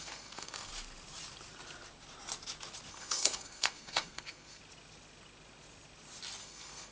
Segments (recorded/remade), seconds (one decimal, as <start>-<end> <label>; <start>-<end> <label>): 0.0-0.7 remade; 0.7-2.9 recorded; 2.9-4.6 remade; 4.6-6.4 recorded; 6.4-6.9 remade